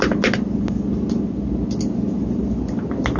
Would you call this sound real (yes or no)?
yes